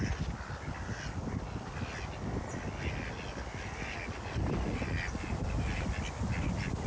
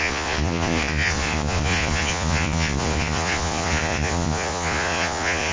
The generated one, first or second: second